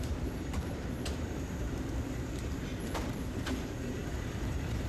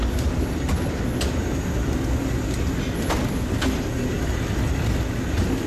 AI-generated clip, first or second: first